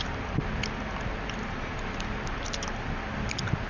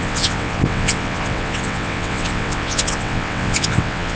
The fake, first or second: second